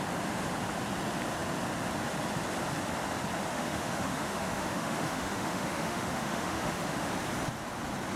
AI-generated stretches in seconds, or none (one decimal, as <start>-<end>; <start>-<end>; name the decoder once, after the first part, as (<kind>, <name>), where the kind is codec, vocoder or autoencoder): 3.5-7.1 (autoencoder, DAC-VAE)